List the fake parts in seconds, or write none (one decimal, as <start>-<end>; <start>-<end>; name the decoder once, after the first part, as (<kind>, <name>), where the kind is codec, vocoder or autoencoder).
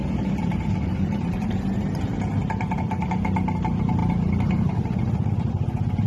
0.0-1.8 (vocoder, BigVGAN v2)